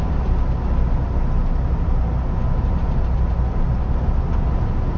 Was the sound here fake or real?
real